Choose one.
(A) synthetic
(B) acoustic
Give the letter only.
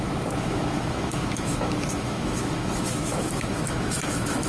A